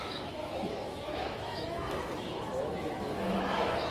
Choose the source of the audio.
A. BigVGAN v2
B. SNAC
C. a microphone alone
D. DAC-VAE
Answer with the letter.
D